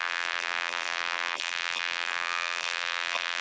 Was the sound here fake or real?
fake